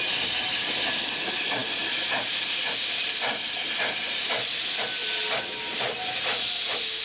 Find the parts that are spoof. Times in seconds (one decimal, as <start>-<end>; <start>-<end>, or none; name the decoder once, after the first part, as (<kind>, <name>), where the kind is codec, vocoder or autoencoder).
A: none

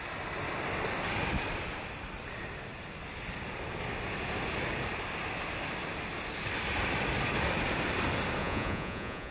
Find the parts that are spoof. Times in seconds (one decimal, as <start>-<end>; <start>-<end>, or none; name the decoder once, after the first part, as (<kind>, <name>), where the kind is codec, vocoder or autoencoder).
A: 8.4-9.3 (vocoder, Vocos)

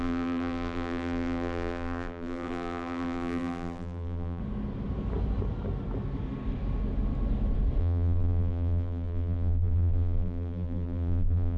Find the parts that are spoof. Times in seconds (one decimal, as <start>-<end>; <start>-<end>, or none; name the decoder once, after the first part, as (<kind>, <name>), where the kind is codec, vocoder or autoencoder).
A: 0.0-4.4 (vocoder, BigVGAN v2); 7.8-11.6

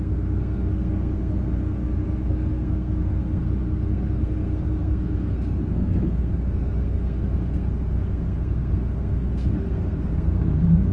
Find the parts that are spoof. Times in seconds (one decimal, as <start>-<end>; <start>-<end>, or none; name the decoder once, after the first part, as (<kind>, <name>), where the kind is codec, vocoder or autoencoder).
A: 0.0-10.9 (codec, SNAC)

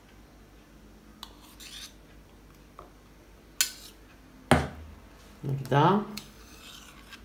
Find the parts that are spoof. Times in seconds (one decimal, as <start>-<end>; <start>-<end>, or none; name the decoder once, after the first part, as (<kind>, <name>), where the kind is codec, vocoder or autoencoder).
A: 6.1-6.6 (codec, DAC)

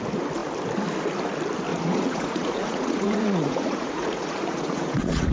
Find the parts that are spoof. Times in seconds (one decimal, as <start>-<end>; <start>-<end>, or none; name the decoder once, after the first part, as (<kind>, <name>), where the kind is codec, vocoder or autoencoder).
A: 1.7-5.3 (vocoder, Vocos)

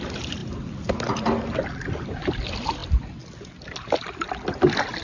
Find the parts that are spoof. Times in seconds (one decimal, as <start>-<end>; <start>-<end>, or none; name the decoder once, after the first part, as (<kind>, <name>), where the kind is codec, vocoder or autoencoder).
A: none